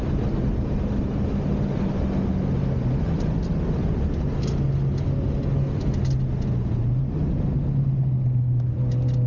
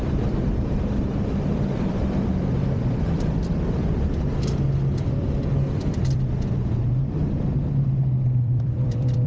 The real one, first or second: first